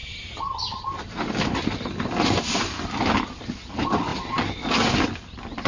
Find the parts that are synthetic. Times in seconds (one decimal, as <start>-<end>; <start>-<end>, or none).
none